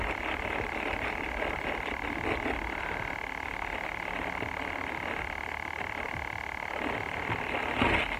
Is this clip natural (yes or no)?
yes